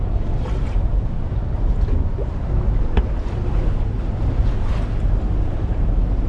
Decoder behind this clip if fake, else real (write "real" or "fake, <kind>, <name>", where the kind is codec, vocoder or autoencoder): real